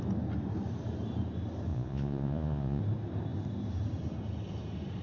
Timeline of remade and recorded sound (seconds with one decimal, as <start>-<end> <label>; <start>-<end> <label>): 0.0-1.7 recorded; 1.7-2.8 remade; 2.8-5.0 recorded